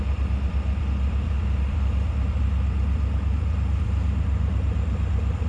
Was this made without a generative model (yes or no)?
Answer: no